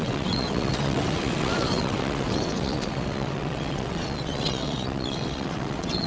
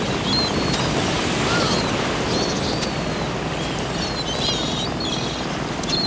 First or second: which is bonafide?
second